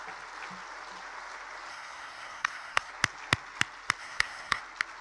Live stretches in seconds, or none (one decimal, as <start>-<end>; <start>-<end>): 0.0-1.7; 2.9-4.0; 4.6-5.0

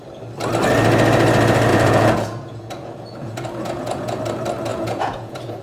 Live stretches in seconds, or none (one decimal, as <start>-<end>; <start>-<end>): 0.0-1.7; 4.2-4.7

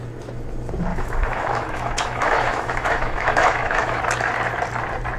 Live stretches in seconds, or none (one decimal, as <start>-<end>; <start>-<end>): 0.0-0.9; 4.0-5.2